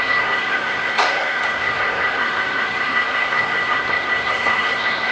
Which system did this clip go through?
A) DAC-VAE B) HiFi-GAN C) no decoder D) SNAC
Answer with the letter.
D